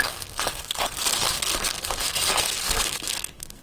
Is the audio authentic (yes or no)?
no